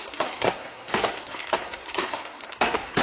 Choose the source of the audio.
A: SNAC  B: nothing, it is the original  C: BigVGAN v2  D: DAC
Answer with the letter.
A